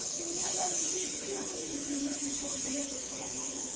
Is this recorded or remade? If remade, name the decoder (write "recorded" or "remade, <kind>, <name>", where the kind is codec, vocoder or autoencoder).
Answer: remade, codec, HILCodec